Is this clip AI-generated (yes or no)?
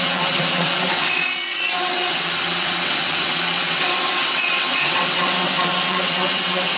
yes